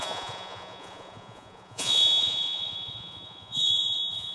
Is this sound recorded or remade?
remade